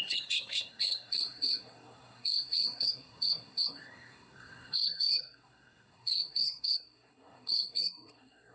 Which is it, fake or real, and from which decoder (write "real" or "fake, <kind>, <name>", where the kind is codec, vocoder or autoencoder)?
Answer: fake, codec, SNAC